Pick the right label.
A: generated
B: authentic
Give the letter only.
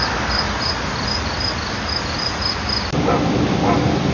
B